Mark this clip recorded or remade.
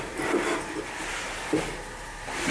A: recorded